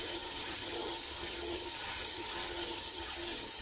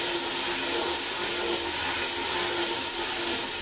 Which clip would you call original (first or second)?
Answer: second